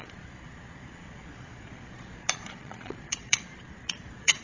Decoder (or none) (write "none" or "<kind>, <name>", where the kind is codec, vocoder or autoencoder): vocoder, Vocos